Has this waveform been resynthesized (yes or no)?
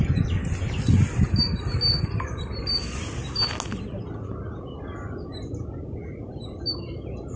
no